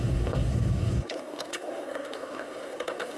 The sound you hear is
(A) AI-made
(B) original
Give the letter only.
A